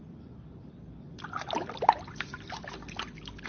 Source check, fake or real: real